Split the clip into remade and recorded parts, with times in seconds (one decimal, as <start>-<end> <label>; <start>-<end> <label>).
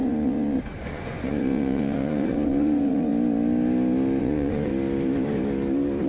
0.0-3.1 remade; 3.1-4.2 recorded; 4.2-4.7 remade; 4.7-6.1 recorded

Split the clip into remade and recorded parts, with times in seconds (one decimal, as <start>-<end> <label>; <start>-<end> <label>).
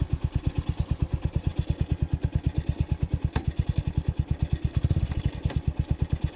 0.0-6.4 recorded